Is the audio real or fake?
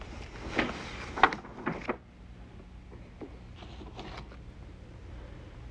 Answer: real